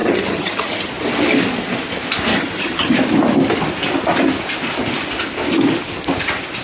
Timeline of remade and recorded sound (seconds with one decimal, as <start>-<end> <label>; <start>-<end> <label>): 0.0-0.9 remade; 0.9-2.3 recorded; 2.3-2.9 remade; 2.9-6.6 recorded